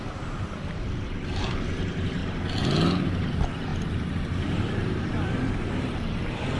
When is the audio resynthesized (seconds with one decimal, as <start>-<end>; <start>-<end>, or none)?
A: 0.0-2.2; 3.0-6.6